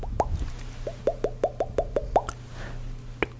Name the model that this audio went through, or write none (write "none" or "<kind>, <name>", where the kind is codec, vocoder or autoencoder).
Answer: none